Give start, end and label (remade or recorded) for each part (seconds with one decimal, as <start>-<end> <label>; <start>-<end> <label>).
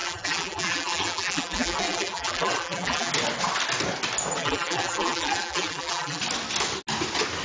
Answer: 0.0-3.1 remade; 3.1-4.4 recorded; 4.4-6.2 remade; 6.2-7.4 recorded